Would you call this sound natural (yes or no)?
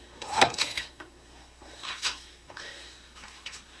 no